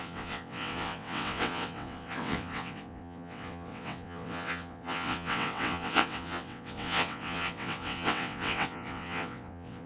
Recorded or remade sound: remade